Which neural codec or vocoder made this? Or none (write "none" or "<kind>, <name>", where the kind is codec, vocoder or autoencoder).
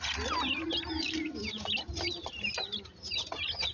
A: none